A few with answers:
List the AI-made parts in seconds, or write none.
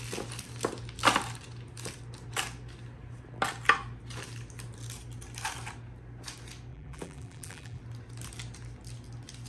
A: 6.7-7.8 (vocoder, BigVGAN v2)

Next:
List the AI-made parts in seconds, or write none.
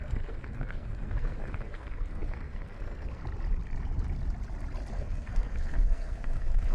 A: 0.0-3.2 (codec, SNAC); 4.9-6.7